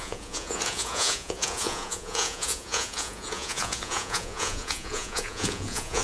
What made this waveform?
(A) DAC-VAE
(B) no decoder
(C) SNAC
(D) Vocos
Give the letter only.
D